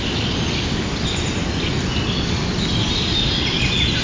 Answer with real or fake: real